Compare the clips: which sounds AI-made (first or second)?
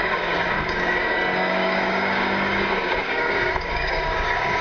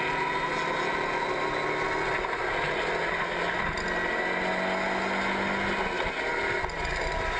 first